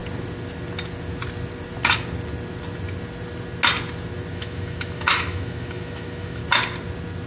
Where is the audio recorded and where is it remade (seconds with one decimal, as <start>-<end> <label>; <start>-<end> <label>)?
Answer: 0.0-4.3 recorded; 4.3-6.4 remade; 6.4-7.3 recorded